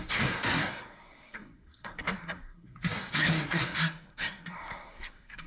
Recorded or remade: remade